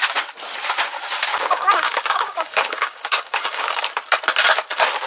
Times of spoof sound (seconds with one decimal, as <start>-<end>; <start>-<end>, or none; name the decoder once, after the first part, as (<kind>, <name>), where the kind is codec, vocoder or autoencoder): 1.3-3.8 (codec, DAC)